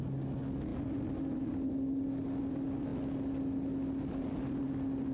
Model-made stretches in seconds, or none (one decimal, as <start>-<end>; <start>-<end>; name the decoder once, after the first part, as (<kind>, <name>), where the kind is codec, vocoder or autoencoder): none